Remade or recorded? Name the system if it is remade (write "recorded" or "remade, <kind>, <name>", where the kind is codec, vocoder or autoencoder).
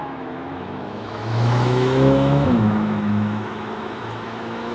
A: remade, autoencoder, DAC-VAE